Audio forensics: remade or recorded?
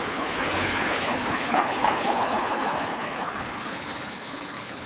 remade